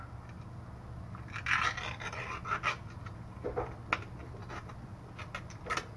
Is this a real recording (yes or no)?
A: yes